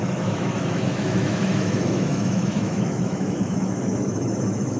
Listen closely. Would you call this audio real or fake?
fake